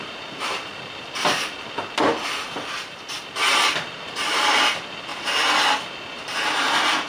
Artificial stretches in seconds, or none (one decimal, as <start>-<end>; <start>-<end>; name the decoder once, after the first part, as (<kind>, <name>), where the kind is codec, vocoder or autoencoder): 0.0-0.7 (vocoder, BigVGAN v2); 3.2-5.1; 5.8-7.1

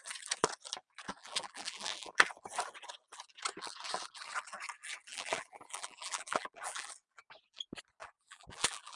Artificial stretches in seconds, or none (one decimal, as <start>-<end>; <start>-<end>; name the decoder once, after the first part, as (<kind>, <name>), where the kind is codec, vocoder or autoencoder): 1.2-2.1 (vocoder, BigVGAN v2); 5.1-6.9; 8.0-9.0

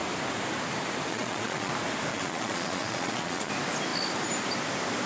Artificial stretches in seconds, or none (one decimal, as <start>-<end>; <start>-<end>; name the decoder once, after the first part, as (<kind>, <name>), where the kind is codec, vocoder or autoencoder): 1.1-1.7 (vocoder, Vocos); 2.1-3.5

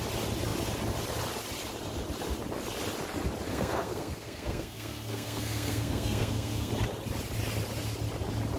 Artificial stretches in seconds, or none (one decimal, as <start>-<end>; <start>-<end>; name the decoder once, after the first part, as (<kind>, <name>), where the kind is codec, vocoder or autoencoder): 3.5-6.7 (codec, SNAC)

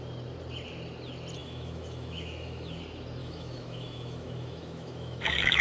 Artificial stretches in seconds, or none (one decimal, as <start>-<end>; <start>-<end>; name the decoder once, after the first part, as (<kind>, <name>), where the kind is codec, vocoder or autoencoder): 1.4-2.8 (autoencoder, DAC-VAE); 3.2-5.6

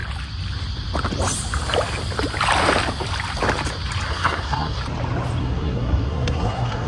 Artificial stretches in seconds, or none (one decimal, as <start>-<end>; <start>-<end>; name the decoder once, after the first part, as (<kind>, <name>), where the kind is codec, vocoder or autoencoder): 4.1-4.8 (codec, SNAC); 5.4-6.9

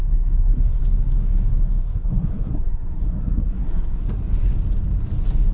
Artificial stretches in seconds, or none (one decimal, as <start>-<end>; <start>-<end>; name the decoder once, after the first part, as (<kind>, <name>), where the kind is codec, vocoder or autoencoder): 0.0-0.8 (codec, SNAC); 1.8-4.2

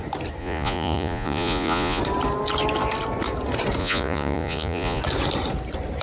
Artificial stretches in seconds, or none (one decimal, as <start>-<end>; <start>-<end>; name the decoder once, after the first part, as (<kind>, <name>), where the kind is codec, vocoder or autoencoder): 0.4-2.0 (vocoder, Vocos); 3.8-5.0